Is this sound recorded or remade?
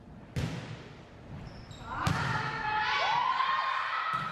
recorded